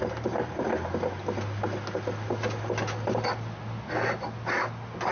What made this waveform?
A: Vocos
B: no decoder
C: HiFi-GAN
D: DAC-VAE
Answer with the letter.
B